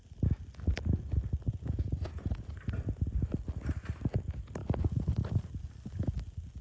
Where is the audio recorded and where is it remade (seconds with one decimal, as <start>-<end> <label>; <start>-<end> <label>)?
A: 0.0-1.5 recorded; 1.5-2.6 remade; 2.6-6.6 recorded